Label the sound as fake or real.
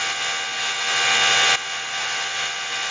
real